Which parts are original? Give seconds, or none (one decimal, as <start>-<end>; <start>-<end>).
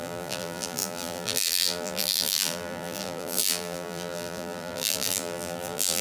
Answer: none